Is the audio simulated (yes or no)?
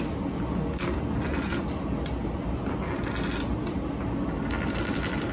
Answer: no